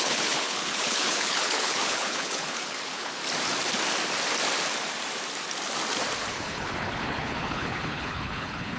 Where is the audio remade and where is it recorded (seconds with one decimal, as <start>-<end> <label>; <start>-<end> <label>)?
0.0-3.2 remade; 3.2-6.3 recorded; 6.3-8.8 remade